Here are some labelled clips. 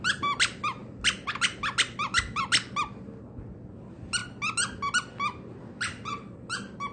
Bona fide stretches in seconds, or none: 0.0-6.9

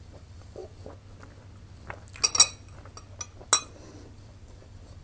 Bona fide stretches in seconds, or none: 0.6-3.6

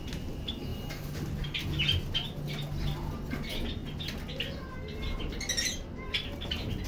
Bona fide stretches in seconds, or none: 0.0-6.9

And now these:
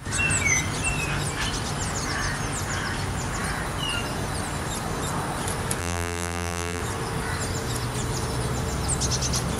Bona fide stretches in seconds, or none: 0.0-5.8; 6.8-9.6

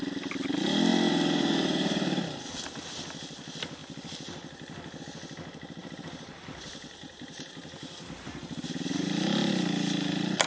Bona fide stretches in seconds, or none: 0.0-0.9; 2.2-5.8; 9.5-10.5

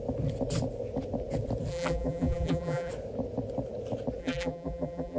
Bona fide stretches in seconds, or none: 0.0-1.7; 2.9-4.2

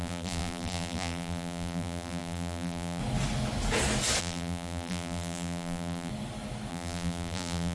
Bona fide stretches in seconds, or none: 3.0-4.2; 6.1-6.7